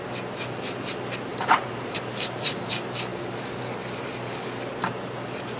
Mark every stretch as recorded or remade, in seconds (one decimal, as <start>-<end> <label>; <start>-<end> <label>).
0.0-1.3 recorded; 1.3-2.7 remade; 2.7-5.6 recorded